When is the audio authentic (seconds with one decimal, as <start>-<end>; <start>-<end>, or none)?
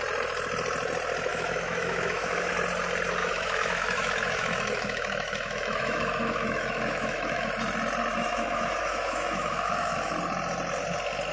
0.0-1.3; 2.5-3.2; 7.5-8.1; 10.1-11.3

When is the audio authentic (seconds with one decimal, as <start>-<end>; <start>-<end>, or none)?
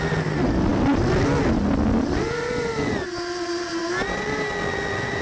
0.0-5.2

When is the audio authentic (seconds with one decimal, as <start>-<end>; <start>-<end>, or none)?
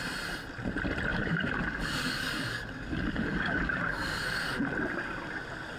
0.0-1.1; 4.6-5.8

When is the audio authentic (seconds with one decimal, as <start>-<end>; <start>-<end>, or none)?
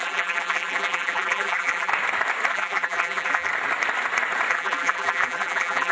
1.9-2.5; 3.5-4.5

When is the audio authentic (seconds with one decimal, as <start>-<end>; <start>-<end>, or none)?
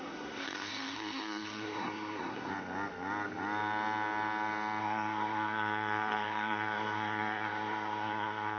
2.5-4.8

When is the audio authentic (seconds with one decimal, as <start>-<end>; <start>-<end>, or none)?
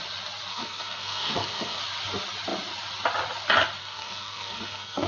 0.0-0.5; 1.8-3.8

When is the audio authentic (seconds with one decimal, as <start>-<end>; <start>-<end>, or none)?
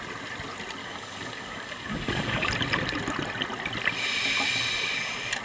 0.0-0.8; 2.5-5.4